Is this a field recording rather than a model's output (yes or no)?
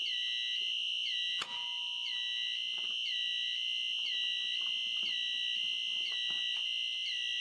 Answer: yes